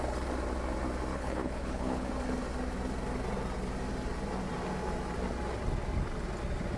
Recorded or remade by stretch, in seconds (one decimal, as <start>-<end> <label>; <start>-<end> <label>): 0.0-1.1 recorded; 1.1-2.1 remade; 2.1-6.8 recorded